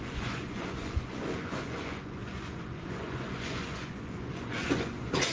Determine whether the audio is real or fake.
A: fake